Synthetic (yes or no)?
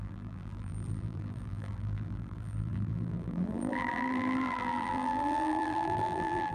yes